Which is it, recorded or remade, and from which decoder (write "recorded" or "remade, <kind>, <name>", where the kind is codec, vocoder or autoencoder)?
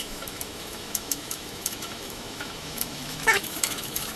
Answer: remade, autoencoder, DAC-VAE